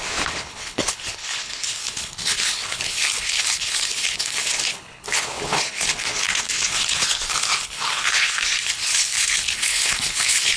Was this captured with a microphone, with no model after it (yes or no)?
no